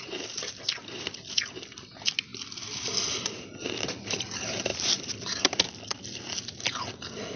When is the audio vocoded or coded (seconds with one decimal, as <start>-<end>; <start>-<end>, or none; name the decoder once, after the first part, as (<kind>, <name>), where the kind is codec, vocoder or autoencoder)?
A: 0.0-7.4 (vocoder, BigVGAN v2)